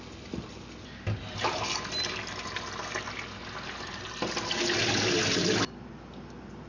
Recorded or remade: recorded